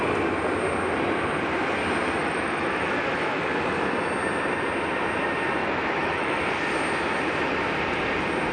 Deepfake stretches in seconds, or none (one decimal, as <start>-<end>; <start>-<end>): 2.2-3.4; 5.6-6.4